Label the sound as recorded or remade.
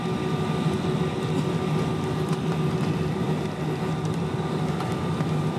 recorded